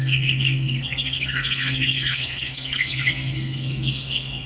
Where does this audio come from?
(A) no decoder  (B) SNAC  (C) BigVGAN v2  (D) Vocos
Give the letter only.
B